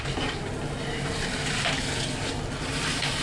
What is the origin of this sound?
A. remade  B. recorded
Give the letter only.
B